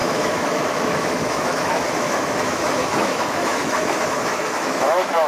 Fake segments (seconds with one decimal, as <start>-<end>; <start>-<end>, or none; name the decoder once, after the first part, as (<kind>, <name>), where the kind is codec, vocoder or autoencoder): 0.0-5.3 (autoencoder, DAC-VAE)